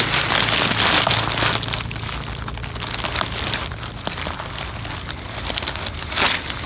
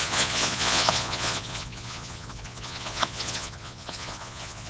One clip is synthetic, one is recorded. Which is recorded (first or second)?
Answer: first